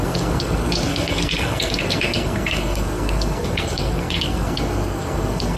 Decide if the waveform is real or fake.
fake